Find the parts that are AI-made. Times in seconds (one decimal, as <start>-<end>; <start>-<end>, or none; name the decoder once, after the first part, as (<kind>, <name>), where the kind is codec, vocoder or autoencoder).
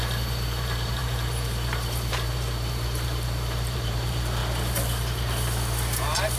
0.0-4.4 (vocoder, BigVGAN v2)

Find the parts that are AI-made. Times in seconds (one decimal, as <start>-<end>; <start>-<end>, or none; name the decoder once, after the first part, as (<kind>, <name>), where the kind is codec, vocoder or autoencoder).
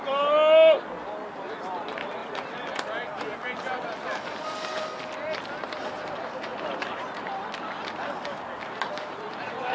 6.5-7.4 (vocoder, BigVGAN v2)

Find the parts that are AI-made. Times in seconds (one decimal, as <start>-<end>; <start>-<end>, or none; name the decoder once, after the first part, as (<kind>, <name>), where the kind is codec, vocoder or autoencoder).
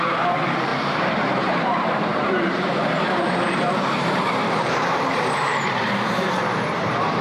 0.0-7.2 (vocoder, BigVGAN v2)